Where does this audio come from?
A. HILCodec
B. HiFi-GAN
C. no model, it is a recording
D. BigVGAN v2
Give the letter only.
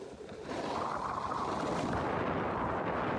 C